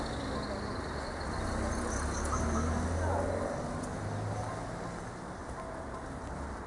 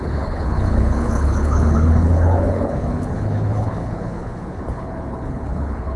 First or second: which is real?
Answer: first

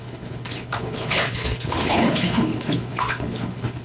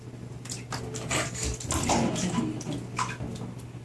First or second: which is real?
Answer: second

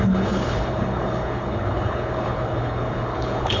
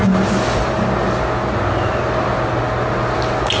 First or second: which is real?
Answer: second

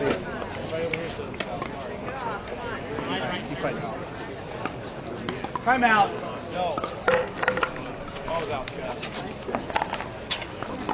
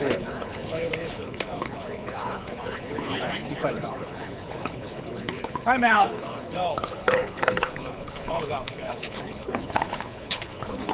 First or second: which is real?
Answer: first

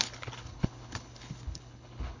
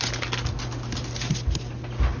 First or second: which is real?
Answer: second